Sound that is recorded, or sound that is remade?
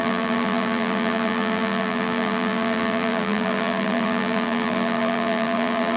remade